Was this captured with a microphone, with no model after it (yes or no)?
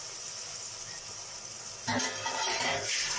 yes